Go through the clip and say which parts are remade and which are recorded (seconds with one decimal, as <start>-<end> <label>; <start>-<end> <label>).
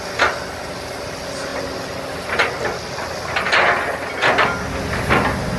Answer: 0.0-5.6 recorded